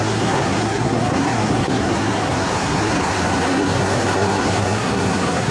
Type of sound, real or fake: fake